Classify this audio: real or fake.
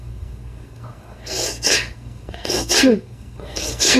fake